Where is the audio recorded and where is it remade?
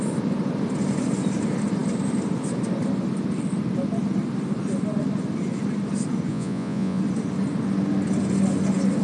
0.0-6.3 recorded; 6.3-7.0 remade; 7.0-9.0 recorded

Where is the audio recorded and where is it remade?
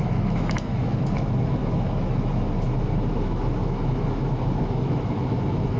0.0-5.8 remade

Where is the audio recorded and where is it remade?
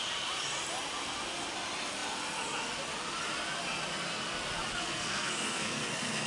0.0-4.7 recorded; 4.7-6.3 remade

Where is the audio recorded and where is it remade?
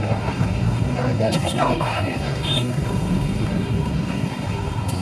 0.0-5.0 remade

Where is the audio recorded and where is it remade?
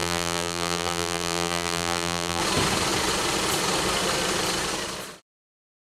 0.0-2.4 remade; 2.4-5.9 recorded